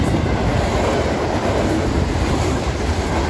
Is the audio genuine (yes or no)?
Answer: yes